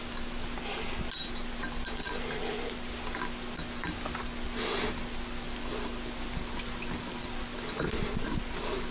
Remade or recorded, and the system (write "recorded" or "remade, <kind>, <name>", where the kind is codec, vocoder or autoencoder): recorded